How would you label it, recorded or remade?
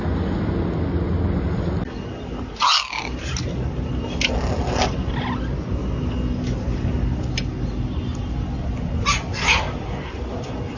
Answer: recorded